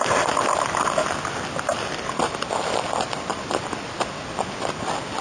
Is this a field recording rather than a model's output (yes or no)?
yes